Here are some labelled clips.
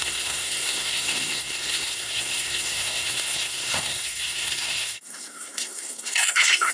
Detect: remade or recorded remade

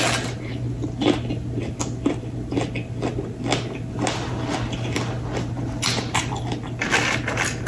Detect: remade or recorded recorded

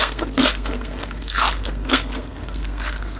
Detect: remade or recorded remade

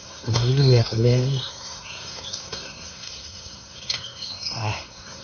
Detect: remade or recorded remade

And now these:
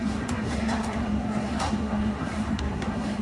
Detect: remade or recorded remade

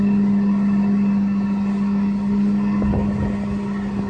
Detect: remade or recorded recorded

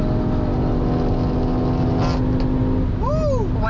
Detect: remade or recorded recorded